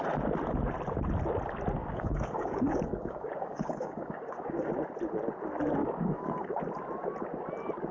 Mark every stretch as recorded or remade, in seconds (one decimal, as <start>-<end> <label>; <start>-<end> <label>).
0.0-1.8 recorded; 1.8-4.7 remade; 4.7-5.8 recorded; 5.8-6.6 remade; 6.6-7.9 recorded